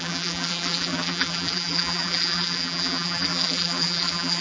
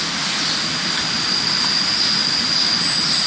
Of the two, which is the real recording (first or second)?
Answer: second